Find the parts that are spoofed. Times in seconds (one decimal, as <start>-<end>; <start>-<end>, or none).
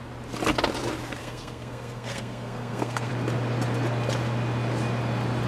1.2-3.1